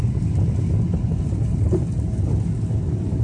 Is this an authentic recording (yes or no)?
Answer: yes